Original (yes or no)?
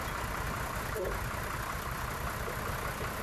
yes